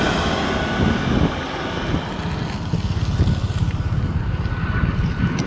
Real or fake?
real